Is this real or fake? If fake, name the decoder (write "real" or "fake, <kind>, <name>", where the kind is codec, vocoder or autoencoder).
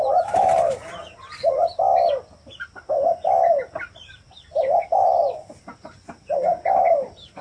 real